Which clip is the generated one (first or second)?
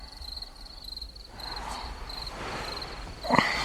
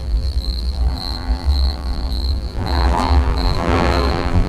second